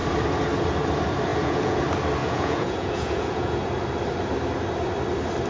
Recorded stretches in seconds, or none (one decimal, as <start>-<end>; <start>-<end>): 0.0-1.3; 1.8-2.2; 3.6-5.5